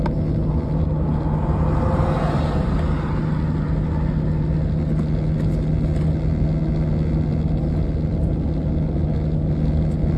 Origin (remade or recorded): recorded